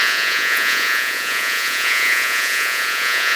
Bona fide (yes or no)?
no